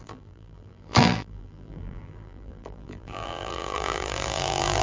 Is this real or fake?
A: fake